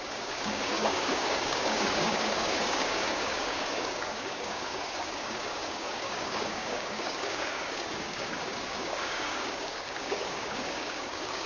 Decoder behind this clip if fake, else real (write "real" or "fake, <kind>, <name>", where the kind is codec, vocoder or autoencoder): fake, codec, DAC